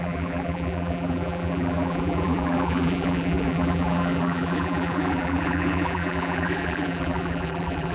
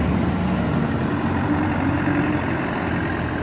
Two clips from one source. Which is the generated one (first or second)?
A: first